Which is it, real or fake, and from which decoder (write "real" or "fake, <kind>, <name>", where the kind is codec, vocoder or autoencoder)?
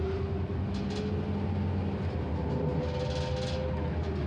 real